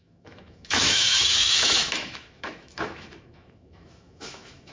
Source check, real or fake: fake